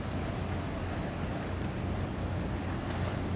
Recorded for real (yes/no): yes